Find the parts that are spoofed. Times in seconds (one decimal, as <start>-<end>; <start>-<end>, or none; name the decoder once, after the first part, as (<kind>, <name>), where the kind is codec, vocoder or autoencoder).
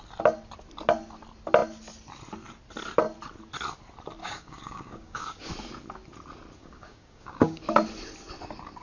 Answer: 4.2-5.5 (codec, DAC); 6.6-7.6